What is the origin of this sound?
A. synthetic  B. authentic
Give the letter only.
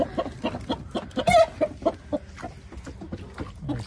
B